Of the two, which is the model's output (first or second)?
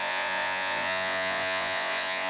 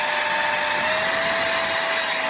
first